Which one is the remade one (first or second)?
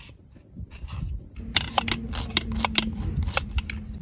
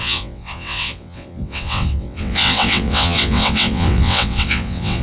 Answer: second